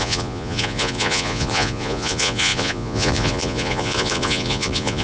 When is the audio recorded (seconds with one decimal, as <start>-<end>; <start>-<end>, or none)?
none